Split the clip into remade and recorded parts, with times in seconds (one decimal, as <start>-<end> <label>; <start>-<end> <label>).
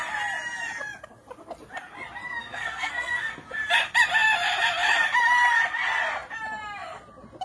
0.0-2.4 recorded; 2.4-3.3 remade; 3.3-7.4 recorded